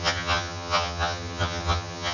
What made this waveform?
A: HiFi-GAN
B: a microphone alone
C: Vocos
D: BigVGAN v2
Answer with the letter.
A